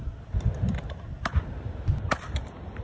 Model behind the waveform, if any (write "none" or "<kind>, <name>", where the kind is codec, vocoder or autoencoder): none